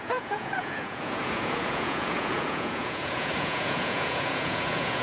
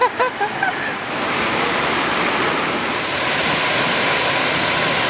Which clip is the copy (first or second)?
first